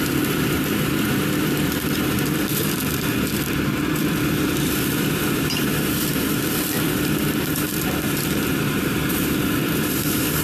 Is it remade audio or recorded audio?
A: remade